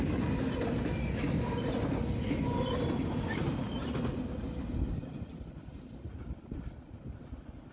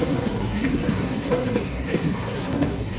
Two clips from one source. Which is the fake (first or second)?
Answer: second